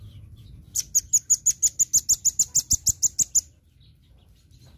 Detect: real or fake real